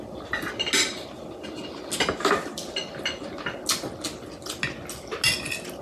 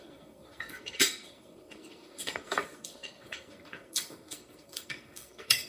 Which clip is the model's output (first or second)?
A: second